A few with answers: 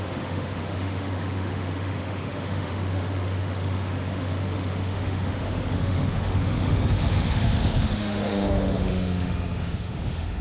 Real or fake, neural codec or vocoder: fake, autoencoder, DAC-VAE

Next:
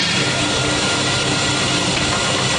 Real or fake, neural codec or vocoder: real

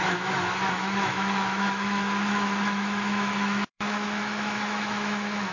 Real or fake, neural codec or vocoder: fake, autoencoder, DAC-VAE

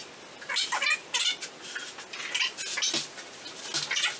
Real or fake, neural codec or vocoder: real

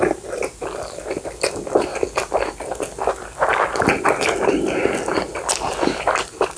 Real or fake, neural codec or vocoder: real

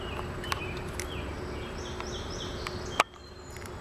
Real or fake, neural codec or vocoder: real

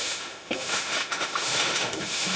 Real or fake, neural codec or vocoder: fake, autoencoder, DAC-VAE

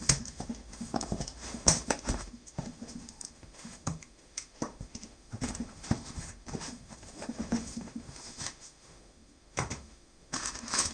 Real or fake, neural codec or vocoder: fake, autoencoder, DAC-VAE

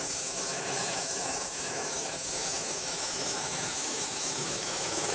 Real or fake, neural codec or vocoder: fake, autoencoder, DAC-VAE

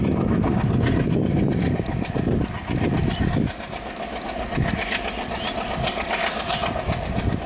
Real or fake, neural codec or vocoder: real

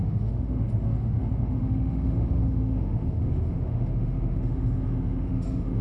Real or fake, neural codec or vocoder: fake, autoencoder, DAC-VAE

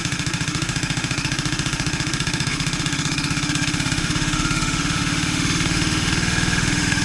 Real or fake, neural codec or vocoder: fake, autoencoder, DAC-VAE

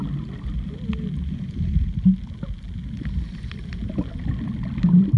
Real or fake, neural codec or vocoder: real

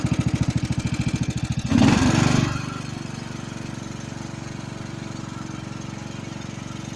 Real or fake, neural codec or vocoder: real